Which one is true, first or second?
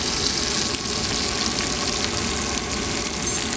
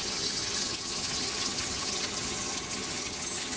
first